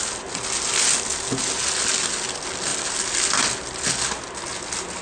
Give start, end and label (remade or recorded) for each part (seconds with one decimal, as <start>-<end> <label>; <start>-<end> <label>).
0.0-5.0 recorded